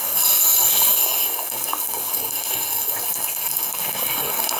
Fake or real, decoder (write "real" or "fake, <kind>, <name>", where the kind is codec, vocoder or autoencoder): fake, codec, SNAC